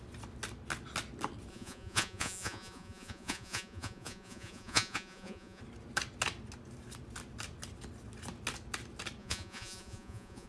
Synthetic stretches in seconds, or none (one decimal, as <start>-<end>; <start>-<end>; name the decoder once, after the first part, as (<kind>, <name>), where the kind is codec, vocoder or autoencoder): 1.5-5.6 (vocoder, Vocos); 9.2-10.5